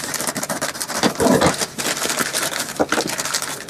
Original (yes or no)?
yes